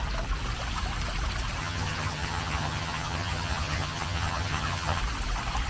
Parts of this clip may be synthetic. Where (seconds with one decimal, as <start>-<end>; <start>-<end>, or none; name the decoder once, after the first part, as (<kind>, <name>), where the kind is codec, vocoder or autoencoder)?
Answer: 1.6-5.0 (vocoder, HiFi-GAN)